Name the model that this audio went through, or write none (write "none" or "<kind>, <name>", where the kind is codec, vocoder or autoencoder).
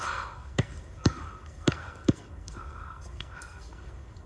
codec, SNAC